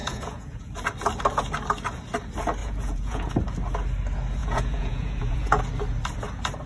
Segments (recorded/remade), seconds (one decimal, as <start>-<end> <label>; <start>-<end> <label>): 0.0-0.7 remade; 0.7-2.6 recorded; 2.6-3.3 remade; 3.3-4.4 recorded; 4.4-5.6 remade; 5.6-6.7 recorded